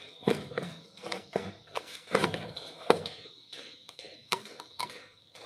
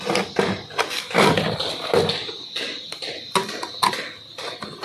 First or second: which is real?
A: second